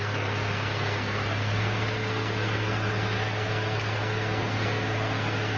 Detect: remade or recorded remade